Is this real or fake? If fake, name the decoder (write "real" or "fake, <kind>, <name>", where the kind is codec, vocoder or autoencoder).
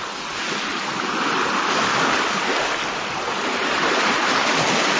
real